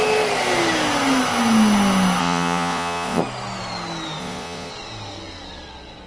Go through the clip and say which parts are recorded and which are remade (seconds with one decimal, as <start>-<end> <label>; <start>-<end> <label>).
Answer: 0.0-2.2 recorded; 2.2-3.2 remade; 3.2-4.2 recorded; 4.2-4.7 remade; 4.7-6.1 recorded